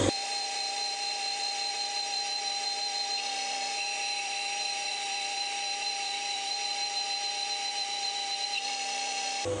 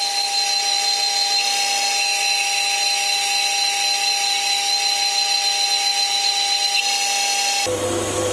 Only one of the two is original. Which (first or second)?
second